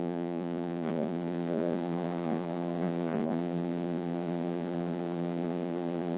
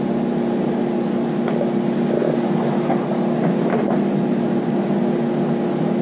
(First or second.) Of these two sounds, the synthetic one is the first